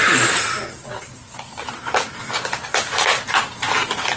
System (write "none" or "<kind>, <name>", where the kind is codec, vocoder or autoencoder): none